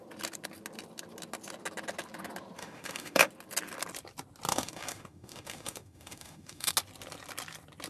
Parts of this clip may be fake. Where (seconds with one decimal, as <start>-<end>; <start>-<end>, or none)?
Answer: 2.6-3.3; 4.5-6.7